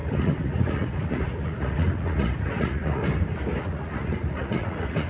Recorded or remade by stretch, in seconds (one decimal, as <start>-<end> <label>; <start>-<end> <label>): 0.0-3.0 remade; 3.0-3.6 recorded; 3.6-5.1 remade